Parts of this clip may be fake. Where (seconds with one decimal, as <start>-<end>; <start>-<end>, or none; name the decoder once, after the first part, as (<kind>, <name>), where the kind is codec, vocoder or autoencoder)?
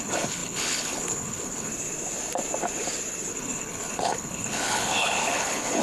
0.0-1.7 (codec, HILCodec); 3.3-5.8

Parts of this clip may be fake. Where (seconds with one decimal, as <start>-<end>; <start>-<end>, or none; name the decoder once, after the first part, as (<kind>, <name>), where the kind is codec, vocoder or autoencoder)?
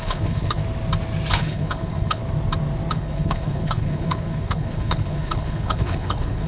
0.0-0.6 (codec, HILCodec); 1.3-2.2; 2.9-6.5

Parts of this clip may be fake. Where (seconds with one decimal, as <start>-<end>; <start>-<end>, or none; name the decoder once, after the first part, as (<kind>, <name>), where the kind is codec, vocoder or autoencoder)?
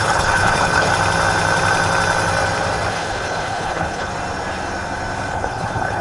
0.0-0.9 (codec, HILCodec); 2.9-4.1; 5.3-6.0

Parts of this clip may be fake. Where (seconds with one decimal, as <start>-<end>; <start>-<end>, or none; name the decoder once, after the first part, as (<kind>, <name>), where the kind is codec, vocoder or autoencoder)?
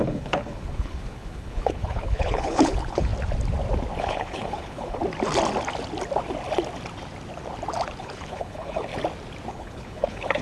0.0-3.1 (codec, HILCodec); 4.0-5.0; 8.0-8.9; 9.5-10.4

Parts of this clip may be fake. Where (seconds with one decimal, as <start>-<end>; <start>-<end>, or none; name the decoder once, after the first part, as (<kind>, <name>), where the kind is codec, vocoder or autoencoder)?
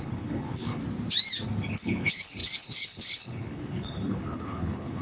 0.0-0.8 (codec, HILCodec); 1.7-5.0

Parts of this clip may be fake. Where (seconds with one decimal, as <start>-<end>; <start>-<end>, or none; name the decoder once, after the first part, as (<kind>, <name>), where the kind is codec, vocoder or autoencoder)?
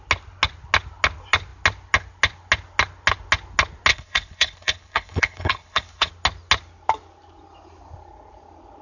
3.9-6.1 (codec, HILCodec)